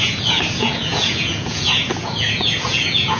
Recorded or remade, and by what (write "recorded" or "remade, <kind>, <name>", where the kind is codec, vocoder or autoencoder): remade, vocoder, Vocos